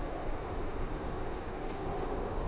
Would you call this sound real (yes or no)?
no